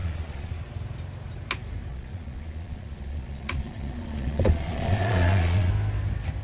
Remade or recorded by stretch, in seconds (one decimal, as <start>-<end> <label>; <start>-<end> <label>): 0.0-0.5 remade; 0.5-1.9 recorded; 1.9-5.7 remade; 5.7-6.4 recorded